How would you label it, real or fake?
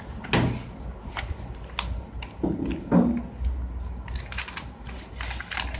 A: real